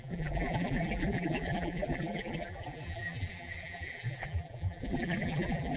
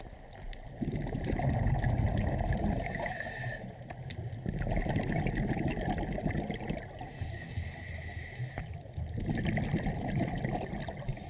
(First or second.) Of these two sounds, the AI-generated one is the first